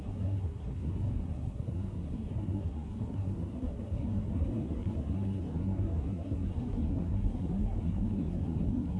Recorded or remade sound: remade